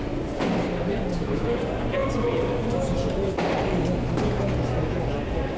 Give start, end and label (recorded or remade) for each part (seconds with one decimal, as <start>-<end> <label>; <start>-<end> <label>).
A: 0.0-1.1 recorded; 1.1-1.6 remade; 1.6-5.6 recorded